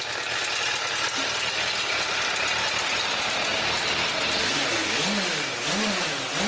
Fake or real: real